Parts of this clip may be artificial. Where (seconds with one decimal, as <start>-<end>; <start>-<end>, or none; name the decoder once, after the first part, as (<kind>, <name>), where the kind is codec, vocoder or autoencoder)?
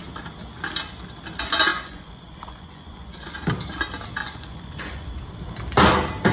1.7-3.3 (vocoder, Vocos); 4.2-5.1